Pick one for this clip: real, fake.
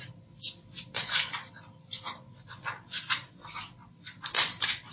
real